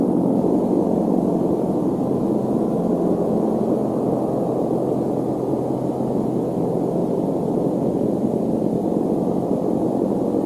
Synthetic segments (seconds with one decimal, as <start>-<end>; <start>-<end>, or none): 7.0-10.5